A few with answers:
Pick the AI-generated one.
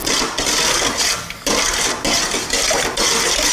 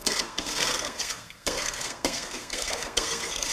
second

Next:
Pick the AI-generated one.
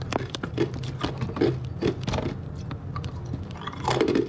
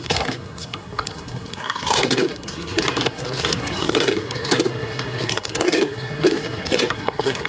second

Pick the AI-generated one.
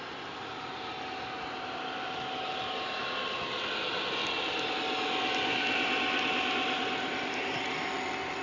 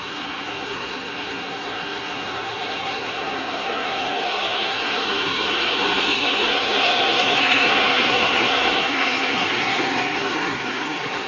second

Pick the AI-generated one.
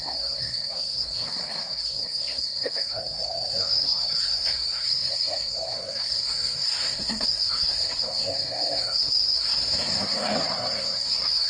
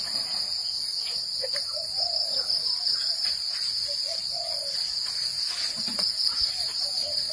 first